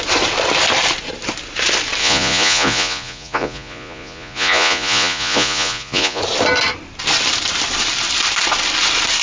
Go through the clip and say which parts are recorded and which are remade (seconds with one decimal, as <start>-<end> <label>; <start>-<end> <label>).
0.0-2.0 recorded; 2.0-6.2 remade; 6.2-9.2 recorded